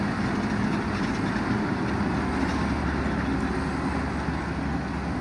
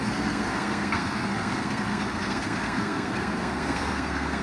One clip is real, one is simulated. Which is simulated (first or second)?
second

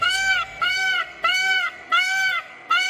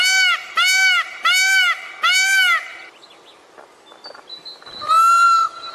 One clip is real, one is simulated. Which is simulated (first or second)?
first